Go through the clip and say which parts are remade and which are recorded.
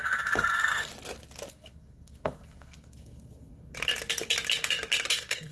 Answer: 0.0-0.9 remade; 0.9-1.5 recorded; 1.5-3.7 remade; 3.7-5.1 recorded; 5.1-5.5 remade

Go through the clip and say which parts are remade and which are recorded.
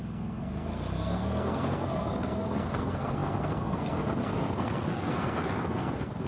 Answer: 0.0-6.3 remade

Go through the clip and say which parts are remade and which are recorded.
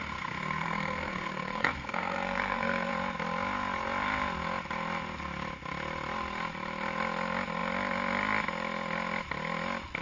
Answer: 0.0-2.9 remade; 2.9-10.0 recorded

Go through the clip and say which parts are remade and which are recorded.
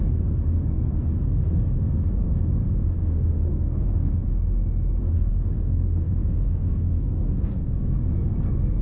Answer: 0.0-4.1 remade; 4.1-5.0 recorded; 5.0-8.8 remade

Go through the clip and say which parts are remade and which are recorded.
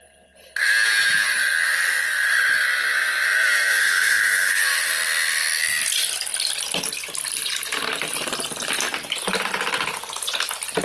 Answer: 0.0-3.8 recorded; 3.8-4.6 remade; 4.6-10.8 recorded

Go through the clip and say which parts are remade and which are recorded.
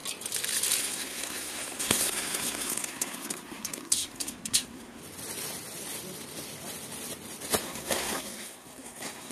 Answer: 0.0-0.8 recorded; 0.8-5.0 remade; 5.0-7.6 recorded; 7.6-9.3 remade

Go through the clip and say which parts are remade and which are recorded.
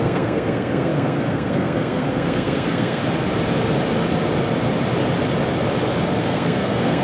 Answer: 0.0-3.0 remade; 3.0-6.2 recorded; 6.2-7.0 remade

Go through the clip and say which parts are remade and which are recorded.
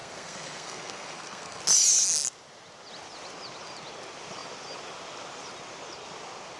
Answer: 0.0-1.6 remade; 1.6-6.6 recorded